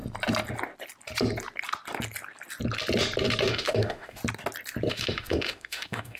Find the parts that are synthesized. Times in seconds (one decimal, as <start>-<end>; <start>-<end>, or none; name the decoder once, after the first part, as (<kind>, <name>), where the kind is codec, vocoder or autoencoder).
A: 3.5-4.2 (autoencoder, DAC-VAE); 4.9-6.2